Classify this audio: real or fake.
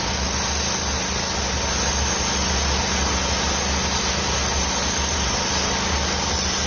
real